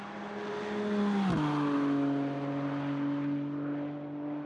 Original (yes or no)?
yes